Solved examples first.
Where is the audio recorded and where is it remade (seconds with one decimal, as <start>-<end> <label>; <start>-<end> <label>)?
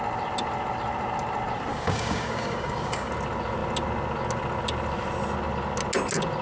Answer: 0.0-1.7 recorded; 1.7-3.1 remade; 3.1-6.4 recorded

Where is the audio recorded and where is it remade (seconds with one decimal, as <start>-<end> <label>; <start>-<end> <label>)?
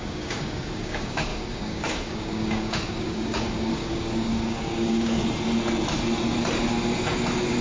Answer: 0.0-5.2 remade; 5.2-7.6 recorded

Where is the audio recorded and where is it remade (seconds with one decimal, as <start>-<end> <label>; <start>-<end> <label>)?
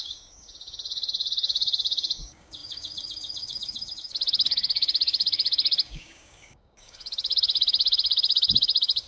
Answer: 0.0-9.1 remade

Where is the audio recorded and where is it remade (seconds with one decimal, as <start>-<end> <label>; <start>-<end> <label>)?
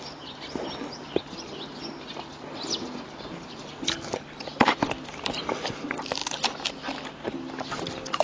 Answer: 0.0-8.2 recorded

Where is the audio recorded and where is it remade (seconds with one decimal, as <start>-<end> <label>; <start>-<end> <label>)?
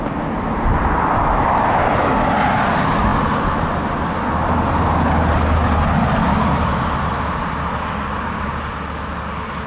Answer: 0.0-9.7 recorded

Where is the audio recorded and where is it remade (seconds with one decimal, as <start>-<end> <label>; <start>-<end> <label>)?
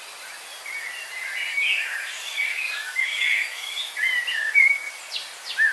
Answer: 0.0-1.5 recorded; 1.5-3.9 remade; 3.9-4.3 recorded; 4.3-4.9 remade; 4.9-5.7 recorded